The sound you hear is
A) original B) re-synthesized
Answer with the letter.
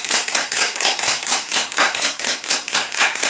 B